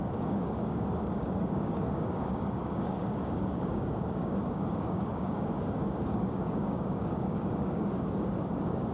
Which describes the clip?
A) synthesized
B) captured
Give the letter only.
A